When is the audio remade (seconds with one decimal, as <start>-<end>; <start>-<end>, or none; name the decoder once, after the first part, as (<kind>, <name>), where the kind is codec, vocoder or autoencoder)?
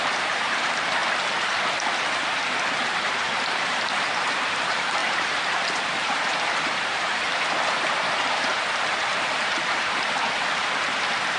0.0-1.0 (vocoder, BigVGAN v2); 2.9-10.6